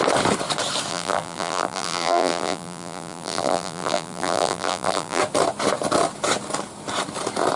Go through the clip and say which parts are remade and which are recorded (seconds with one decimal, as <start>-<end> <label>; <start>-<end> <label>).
0.0-0.9 recorded; 0.9-5.2 remade; 5.2-7.6 recorded